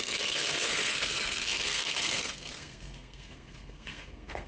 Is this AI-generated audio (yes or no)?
yes